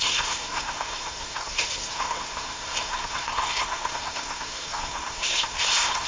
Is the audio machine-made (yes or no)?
yes